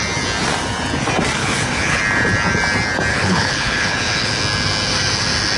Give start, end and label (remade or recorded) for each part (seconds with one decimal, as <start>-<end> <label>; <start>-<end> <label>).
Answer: 0.0-1.4 recorded; 1.4-2.0 remade; 2.0-3.1 recorded; 3.1-4.4 remade; 4.4-5.6 recorded